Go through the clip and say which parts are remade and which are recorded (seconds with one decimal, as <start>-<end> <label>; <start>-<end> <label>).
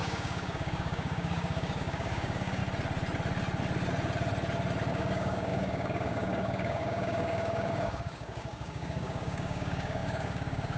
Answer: 0.0-2.6 remade; 2.6-4.9 recorded; 4.9-10.8 remade